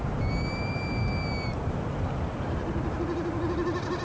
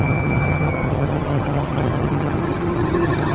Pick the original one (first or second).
first